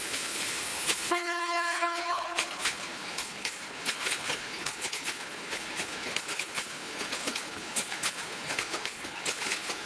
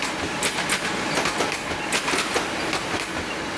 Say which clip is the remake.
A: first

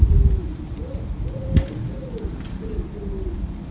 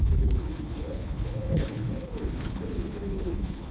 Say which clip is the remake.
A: second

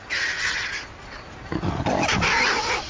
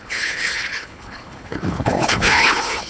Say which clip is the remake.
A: second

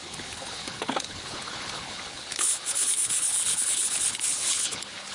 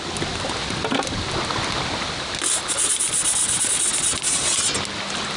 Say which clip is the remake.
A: first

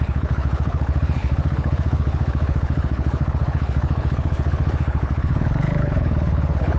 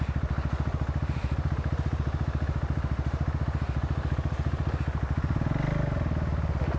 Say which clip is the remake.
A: first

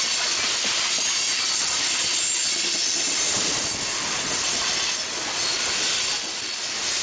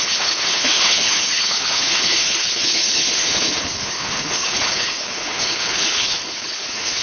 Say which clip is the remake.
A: second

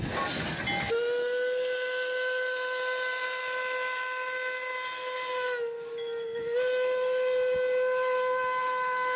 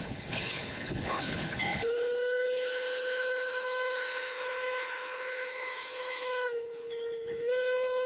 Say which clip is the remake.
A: second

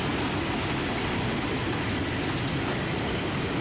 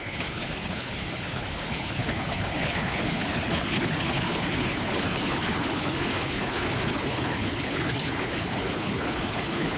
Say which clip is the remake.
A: second